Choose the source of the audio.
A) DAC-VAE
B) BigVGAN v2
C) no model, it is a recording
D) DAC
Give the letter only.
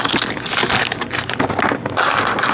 C